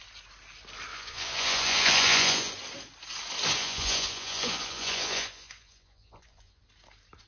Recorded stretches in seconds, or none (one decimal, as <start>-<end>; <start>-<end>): 0.0-0.9; 2.5-3.6; 6.6-7.3